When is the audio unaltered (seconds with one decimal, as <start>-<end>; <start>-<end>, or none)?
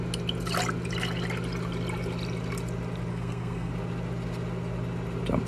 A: 0.0-3.1; 3.7-5.5